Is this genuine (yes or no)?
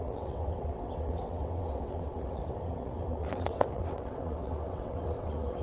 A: no